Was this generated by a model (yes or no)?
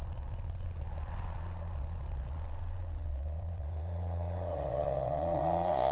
yes